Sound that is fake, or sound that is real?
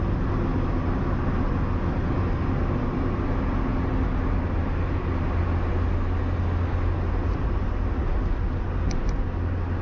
real